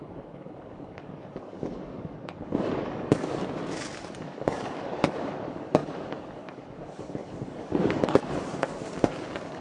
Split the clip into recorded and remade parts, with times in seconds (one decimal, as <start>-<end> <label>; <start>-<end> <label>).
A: 0.0-3.4 remade; 3.4-4.0 recorded; 4.0-9.6 remade